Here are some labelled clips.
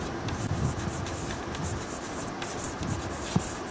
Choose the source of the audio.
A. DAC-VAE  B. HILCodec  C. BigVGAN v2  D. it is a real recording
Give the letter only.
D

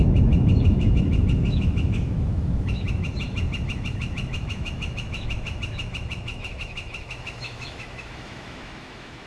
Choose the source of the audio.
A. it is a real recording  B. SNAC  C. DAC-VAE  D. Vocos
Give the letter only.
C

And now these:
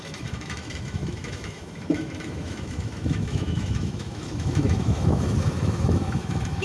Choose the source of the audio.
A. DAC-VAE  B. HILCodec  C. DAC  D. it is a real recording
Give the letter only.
A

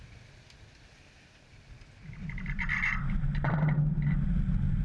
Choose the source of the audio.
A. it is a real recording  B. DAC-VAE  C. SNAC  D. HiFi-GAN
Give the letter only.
A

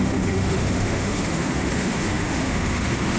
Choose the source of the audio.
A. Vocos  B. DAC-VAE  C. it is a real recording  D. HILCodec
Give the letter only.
B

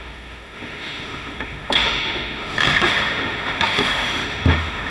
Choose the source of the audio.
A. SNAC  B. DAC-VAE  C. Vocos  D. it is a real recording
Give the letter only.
B